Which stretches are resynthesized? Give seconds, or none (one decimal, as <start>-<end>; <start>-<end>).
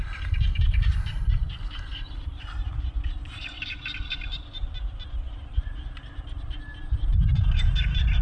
none